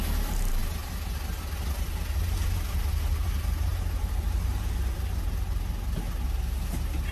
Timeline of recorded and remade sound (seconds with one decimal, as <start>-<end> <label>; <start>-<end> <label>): 0.0-0.6 remade; 0.6-2.3 recorded; 2.3-3.7 remade; 3.7-7.1 recorded